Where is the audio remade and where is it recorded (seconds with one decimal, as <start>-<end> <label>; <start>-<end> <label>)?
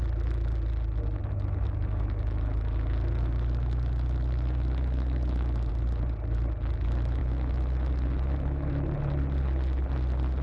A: 0.0-1.2 recorded; 1.2-5.7 remade; 5.7-7.2 recorded; 7.2-8.7 remade; 8.7-10.4 recorded